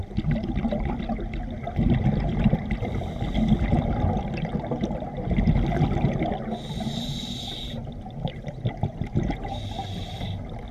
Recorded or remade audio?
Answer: recorded